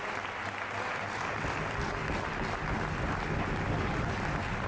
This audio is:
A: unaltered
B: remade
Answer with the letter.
A